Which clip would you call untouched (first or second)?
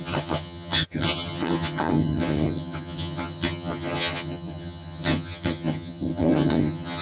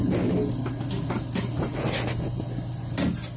second